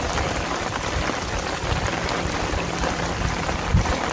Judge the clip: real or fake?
real